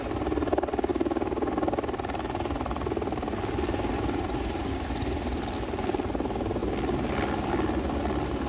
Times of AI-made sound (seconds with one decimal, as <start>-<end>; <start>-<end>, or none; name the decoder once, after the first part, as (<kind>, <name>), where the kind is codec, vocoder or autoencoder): none